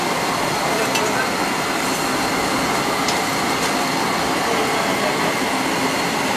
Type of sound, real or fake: real